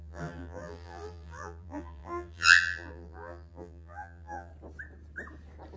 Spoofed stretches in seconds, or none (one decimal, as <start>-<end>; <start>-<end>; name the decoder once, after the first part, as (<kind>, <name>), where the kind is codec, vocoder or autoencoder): 0.0-4.5 (vocoder, BigVGAN v2)

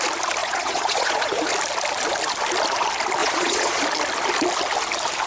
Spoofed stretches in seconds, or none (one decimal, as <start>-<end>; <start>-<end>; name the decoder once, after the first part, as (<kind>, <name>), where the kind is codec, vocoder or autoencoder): 0.4-1.5 (vocoder, Vocos); 3.2-3.8

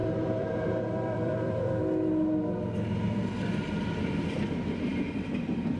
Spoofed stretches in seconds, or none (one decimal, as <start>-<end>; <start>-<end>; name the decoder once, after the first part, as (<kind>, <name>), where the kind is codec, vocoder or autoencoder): 0.0-1.8 (vocoder, BigVGAN v2)